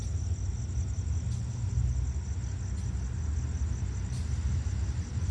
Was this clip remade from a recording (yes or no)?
no